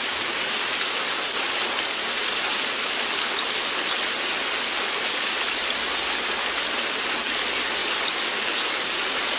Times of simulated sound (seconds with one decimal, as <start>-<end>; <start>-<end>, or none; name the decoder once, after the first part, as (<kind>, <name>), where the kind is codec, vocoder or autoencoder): none